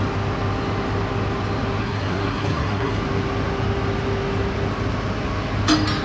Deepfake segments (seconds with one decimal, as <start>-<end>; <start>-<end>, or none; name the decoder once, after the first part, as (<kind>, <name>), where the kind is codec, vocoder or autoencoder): 1.8-3.0 (codec, SNAC)

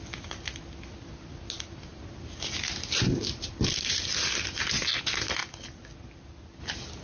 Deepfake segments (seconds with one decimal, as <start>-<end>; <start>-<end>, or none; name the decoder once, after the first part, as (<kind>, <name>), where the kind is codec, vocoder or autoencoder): none